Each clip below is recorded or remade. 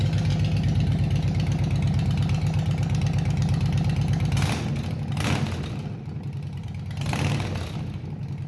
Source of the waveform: recorded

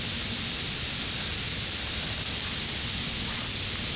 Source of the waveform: recorded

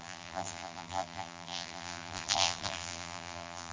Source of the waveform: remade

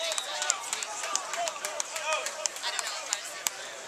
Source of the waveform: remade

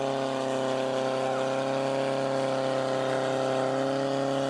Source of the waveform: recorded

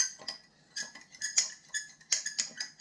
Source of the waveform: recorded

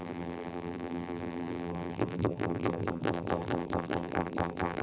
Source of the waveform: remade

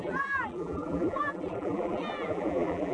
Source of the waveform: remade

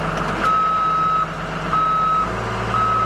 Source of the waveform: recorded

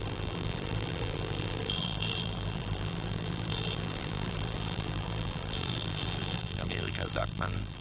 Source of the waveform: remade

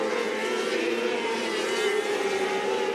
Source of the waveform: remade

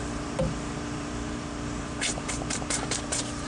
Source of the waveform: remade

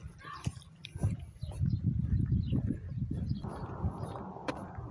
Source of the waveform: remade